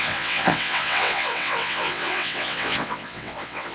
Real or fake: fake